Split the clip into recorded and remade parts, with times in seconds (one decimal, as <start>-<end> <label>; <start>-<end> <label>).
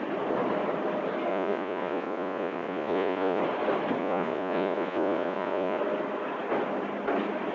0.0-1.3 recorded; 1.3-3.4 remade; 3.4-4.0 recorded; 4.0-5.8 remade; 5.8-7.5 recorded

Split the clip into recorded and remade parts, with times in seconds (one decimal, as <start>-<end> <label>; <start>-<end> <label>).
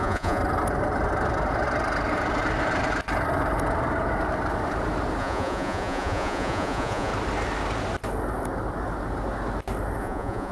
0.0-0.4 remade; 0.4-5.2 recorded; 5.2-7.1 remade; 7.1-10.0 recorded; 10.0-10.5 remade